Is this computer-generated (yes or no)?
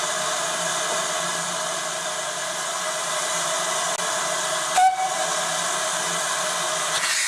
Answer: no